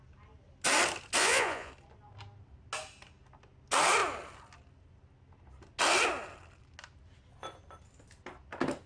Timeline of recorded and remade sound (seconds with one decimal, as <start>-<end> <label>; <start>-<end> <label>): 0.0-1.2 recorded; 1.2-1.7 remade; 1.7-8.9 recorded